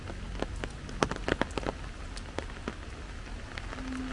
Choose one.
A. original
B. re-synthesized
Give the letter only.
A